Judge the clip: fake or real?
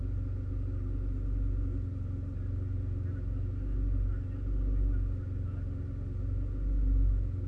real